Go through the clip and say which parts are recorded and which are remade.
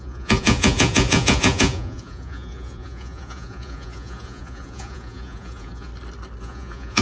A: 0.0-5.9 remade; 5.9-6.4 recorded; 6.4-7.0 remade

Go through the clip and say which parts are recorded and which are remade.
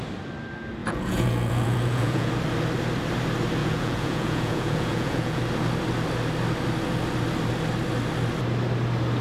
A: 0.0-0.8 recorded; 0.8-2.3 remade; 2.3-3.6 recorded; 3.6-5.4 remade; 5.4-9.2 recorded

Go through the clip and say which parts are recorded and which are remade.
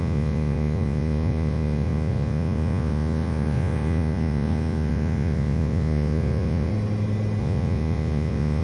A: 0.0-6.7 remade; 6.7-7.4 recorded; 7.4-8.6 remade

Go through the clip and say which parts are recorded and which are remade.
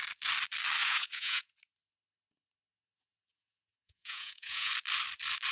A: 0.0-0.8 recorded; 0.8-1.5 remade; 1.5-2.7 recorded; 2.7-4.7 remade; 4.7-5.5 recorded